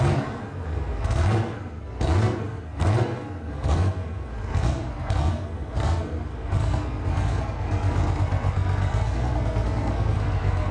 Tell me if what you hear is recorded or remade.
remade